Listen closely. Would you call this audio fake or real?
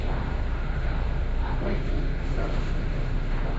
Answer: fake